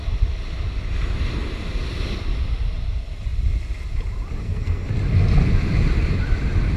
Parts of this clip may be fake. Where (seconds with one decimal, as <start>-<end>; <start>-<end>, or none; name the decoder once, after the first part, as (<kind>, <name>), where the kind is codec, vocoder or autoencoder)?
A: 4.4-4.9 (codec, SNAC)